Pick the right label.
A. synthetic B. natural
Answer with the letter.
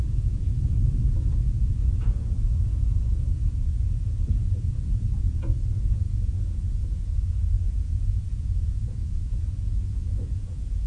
A